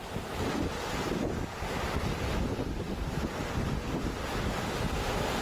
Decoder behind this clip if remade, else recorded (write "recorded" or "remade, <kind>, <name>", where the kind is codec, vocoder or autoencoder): recorded